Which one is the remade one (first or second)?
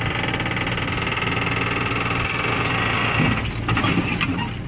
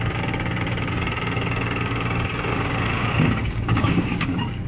second